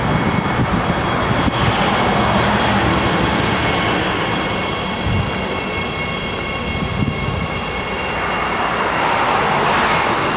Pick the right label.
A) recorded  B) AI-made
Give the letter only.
A